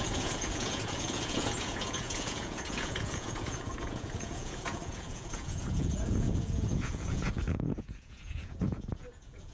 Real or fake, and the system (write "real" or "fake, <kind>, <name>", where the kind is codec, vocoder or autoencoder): fake, vocoder, Vocos